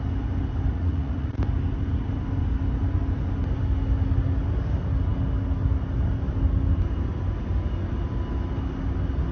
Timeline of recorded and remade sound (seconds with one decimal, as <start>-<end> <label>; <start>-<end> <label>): 0.0-0.7 recorded; 0.7-1.4 remade; 1.4-9.3 recorded